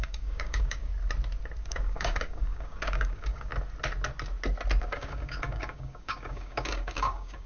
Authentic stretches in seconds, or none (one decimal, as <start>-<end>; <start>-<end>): 0.9-1.6; 3.5-4.8